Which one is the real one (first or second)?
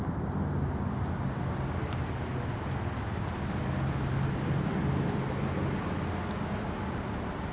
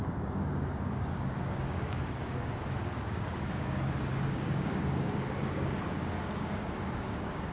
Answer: first